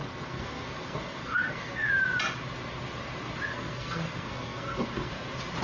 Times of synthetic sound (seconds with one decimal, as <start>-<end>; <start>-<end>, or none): 0.0-1.9; 3.5-5.1